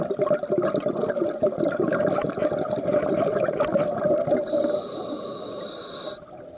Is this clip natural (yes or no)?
yes